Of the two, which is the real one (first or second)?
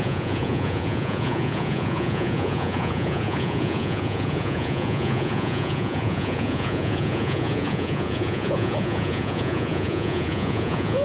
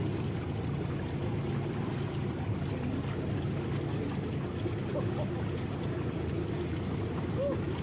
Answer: second